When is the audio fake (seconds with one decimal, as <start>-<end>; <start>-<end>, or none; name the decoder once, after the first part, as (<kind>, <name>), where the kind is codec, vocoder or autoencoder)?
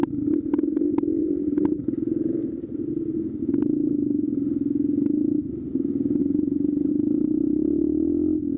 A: 1.2-1.8 (vocoder, BigVGAN v2); 6.2-6.9